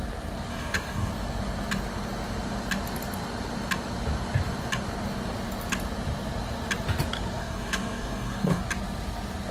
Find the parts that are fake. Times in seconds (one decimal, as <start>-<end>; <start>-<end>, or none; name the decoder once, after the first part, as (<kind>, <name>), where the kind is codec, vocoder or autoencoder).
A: 0.5-1.1 (codec, DAC); 7.4-8.6